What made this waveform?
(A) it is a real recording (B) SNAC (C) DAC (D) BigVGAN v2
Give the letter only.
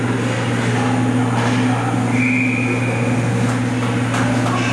A